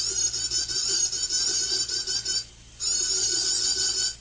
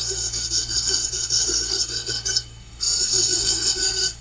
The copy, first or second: second